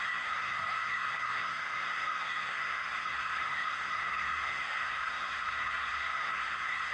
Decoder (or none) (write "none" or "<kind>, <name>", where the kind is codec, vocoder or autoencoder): codec, SNAC